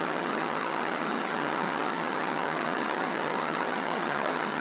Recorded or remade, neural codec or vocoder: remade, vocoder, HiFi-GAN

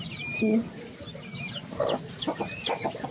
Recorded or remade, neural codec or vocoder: recorded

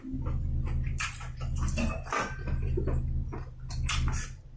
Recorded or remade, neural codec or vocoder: recorded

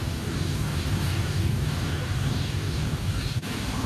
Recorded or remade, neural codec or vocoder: remade, codec, DAC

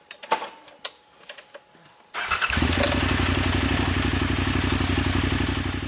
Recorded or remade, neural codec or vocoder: recorded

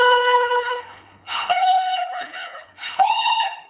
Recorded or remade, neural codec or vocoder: remade, codec, HILCodec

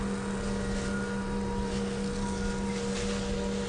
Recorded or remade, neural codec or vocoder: recorded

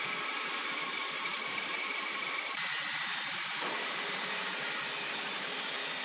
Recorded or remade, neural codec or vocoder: remade, vocoder, BigVGAN v2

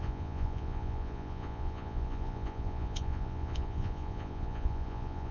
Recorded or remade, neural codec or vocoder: remade, vocoder, Vocos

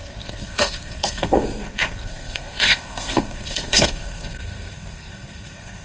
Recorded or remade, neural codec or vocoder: remade, codec, SNAC